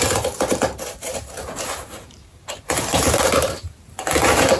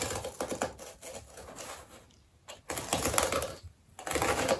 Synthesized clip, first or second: first